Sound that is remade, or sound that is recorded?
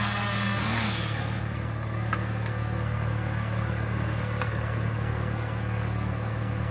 remade